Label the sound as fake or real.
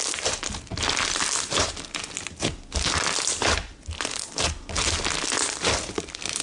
real